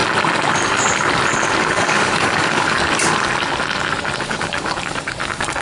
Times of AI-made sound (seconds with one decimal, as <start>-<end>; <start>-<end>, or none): 1.6-2.8; 4.2-5.6